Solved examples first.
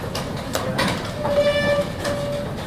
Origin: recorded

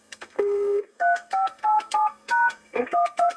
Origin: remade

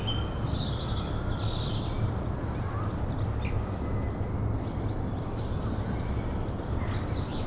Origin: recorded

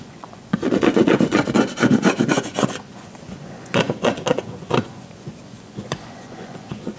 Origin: remade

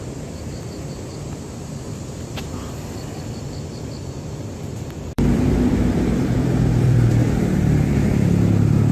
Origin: remade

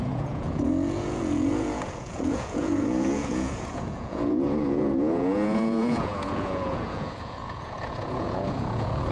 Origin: remade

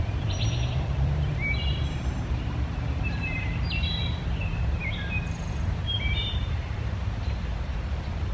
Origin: remade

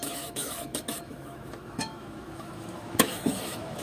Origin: remade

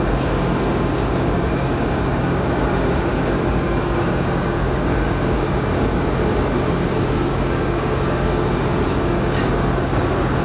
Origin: remade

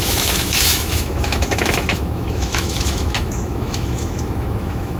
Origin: remade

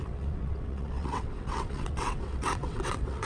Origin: remade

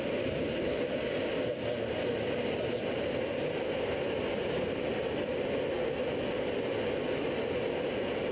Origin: recorded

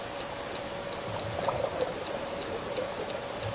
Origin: recorded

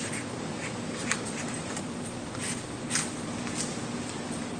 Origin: recorded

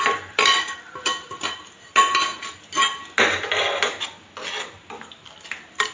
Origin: recorded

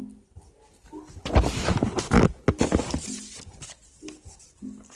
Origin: recorded